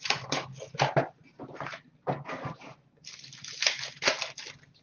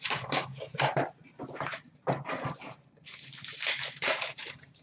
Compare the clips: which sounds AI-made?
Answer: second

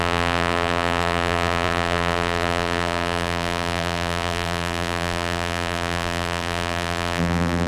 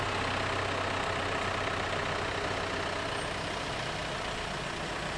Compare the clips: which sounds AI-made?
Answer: first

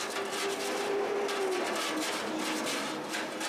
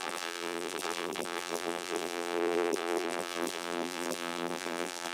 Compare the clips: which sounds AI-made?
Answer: second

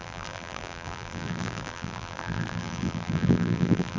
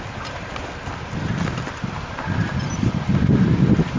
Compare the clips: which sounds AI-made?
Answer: first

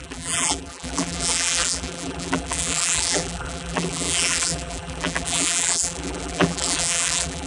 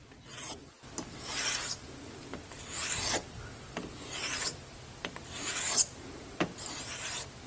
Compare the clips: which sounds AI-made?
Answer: first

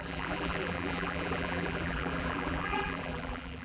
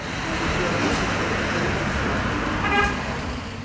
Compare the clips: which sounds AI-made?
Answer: first